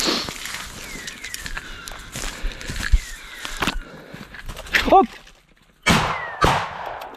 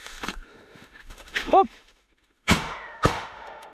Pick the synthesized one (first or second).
second